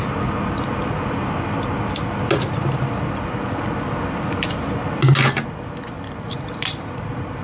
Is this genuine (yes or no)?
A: yes